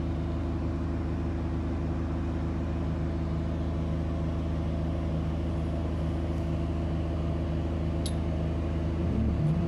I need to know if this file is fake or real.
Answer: real